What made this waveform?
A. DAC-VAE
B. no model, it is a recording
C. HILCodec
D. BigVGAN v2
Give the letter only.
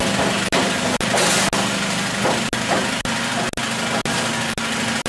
B